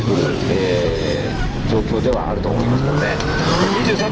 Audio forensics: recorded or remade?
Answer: remade